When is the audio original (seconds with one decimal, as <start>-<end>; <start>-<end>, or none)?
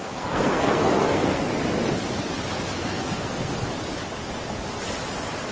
1.5-2.8; 3.5-5.5